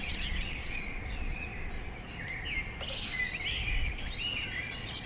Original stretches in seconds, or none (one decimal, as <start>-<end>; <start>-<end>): 1.5-4.6